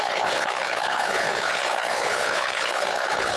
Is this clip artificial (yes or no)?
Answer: yes